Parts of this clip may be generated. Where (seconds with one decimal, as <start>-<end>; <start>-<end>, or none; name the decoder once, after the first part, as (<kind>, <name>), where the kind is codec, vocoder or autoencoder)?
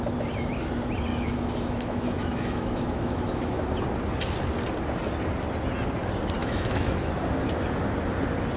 1.1-3.7 (autoencoder, DAC-VAE); 6.4-7.1